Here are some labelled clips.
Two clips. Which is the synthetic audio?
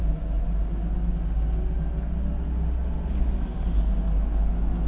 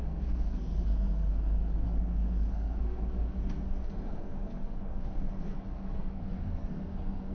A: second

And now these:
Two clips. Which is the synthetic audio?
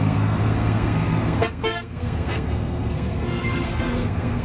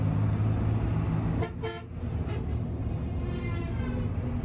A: first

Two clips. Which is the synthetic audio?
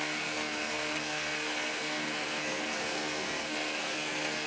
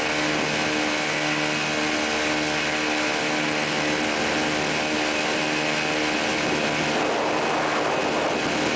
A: first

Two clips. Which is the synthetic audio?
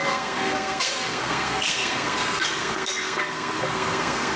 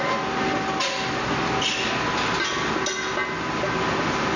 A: first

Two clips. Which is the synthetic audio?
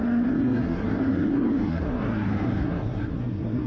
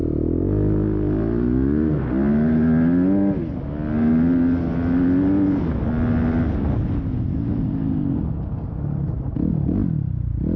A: first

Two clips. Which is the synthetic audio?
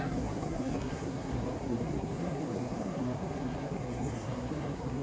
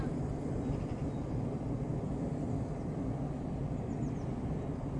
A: first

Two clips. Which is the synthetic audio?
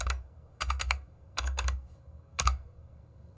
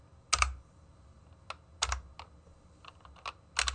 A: first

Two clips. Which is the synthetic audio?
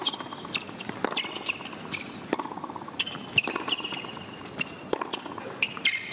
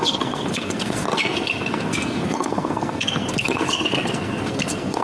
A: second